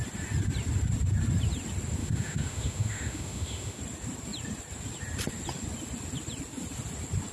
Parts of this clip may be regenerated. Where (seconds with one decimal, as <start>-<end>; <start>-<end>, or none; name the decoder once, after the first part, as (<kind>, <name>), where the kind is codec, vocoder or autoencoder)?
2.0-3.8 (autoencoder, DAC-VAE)